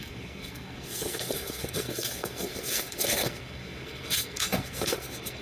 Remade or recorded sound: remade